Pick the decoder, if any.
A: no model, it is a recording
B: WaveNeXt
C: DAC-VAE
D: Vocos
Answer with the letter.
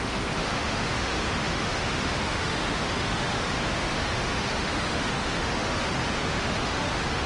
C